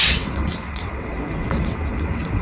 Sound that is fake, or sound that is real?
fake